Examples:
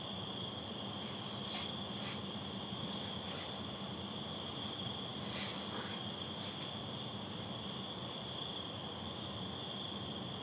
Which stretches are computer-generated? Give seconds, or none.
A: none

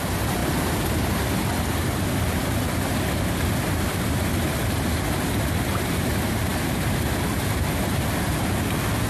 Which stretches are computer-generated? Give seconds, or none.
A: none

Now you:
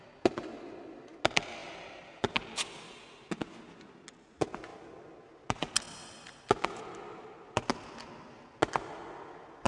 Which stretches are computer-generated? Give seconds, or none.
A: 1.6-2.8

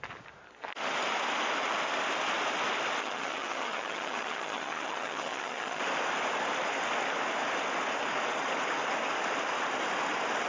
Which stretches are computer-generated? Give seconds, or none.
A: 3.0-5.8

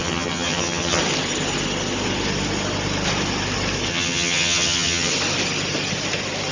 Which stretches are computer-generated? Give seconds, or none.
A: 0.0-1.0; 3.9-5.1

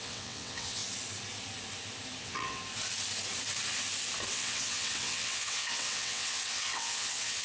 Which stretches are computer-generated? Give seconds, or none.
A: 0.0-0.8; 2.2-2.6; 4.3-7.4

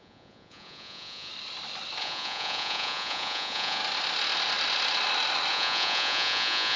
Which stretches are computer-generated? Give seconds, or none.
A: 0.0-1.3; 2.0-3.8; 5.5-6.8

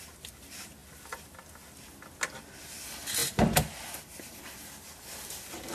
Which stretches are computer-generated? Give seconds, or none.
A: none